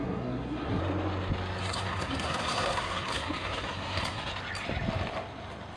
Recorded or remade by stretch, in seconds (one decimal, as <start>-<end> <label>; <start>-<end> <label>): 0.0-0.8 remade; 0.8-1.6 recorded; 1.6-4.3 remade; 4.3-5.8 recorded